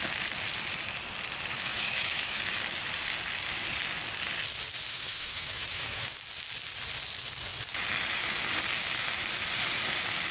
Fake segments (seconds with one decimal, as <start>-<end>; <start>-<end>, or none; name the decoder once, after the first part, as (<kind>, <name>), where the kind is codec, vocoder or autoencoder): 1.5-2.4 (autoencoder, DAC-VAE); 4.9-6.2

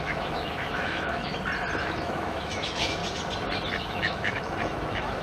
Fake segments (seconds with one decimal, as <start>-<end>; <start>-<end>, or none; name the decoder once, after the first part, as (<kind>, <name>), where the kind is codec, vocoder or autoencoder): 0.0-1.3 (autoencoder, DAC-VAE); 1.8-3.0; 3.8-5.2